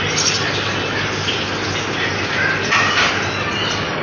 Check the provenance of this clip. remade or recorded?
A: recorded